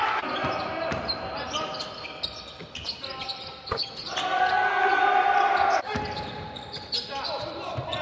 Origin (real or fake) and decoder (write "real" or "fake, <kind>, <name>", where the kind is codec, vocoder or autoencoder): real